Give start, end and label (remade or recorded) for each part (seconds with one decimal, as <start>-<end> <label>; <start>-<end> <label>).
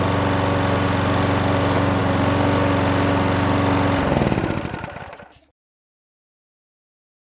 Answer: 0.0-7.2 recorded